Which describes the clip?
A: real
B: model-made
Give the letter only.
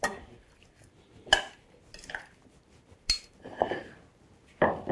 A